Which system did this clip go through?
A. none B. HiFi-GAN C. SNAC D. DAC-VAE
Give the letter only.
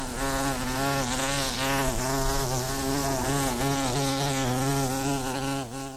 A